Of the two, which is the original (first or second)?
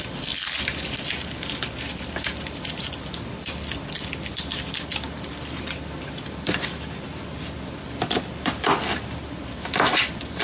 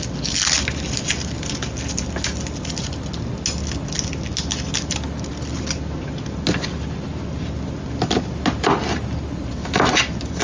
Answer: second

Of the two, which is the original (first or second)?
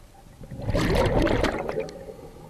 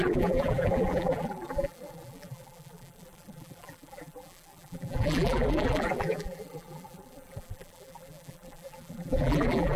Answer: first